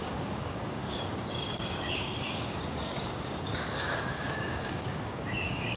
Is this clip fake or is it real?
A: fake